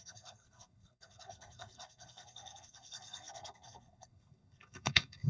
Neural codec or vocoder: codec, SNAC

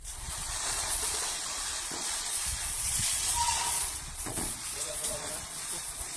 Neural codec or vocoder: vocoder, Vocos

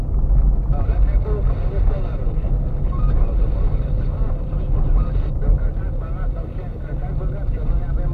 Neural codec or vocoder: none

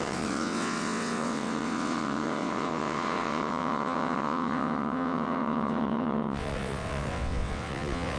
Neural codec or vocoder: vocoder, WaveNeXt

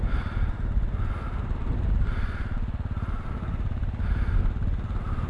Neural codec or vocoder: none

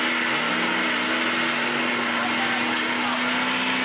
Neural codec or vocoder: none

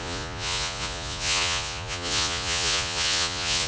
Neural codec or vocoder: vocoder, Vocos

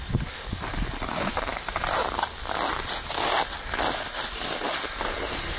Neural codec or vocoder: none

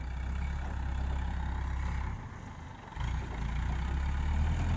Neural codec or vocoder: none